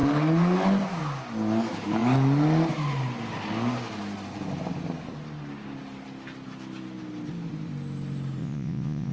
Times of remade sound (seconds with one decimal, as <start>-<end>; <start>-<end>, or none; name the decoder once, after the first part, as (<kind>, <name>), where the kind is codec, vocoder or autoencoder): 8.4-9.1 (vocoder, Vocos)